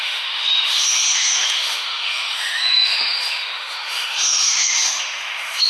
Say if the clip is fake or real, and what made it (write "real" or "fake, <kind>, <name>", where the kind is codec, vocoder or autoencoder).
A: fake, autoencoder, DAC-VAE